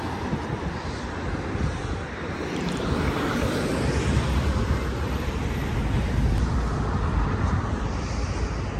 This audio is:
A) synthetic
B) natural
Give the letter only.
B